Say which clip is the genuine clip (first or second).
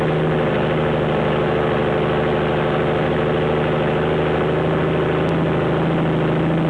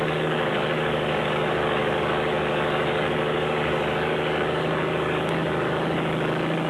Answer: first